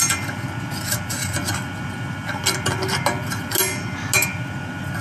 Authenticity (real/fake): real